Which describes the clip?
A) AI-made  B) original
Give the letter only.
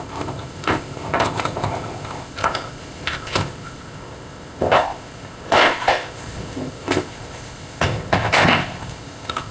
A